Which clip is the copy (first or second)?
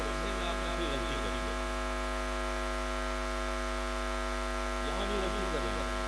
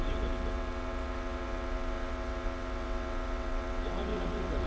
second